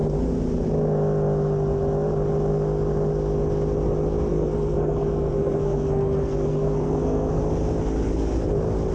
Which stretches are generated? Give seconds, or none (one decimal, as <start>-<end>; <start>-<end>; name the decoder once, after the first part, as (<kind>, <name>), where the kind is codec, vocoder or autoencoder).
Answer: 4.3-7.4 (codec, SNAC)